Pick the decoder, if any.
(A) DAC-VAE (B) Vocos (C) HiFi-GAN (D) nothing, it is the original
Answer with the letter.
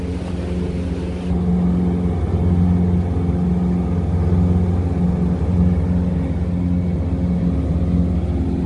D